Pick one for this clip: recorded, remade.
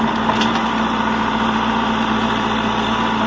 recorded